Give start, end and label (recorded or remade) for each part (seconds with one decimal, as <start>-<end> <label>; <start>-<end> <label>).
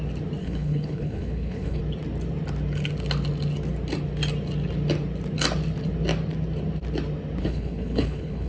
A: 0.0-0.4 recorded; 0.4-1.8 remade; 1.8-7.4 recorded; 7.4-8.5 remade